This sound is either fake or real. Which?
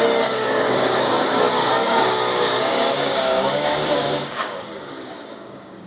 fake